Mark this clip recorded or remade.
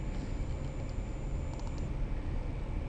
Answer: recorded